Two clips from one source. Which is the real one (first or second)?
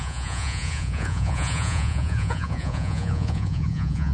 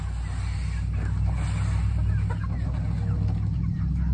second